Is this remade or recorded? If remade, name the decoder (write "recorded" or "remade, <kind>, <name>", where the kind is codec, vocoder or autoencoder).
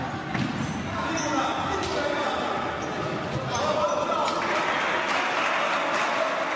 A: recorded